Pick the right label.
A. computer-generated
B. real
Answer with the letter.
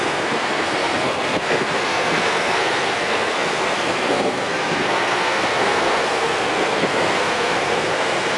A